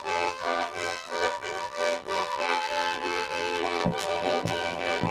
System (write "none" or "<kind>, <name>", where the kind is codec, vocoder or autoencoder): vocoder, BigVGAN v2